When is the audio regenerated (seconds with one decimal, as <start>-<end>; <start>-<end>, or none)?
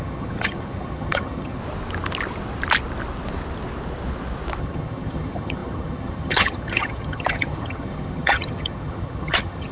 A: 0.0-1.6; 4.6-9.7